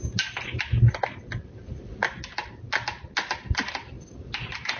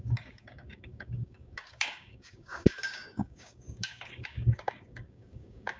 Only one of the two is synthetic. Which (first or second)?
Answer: second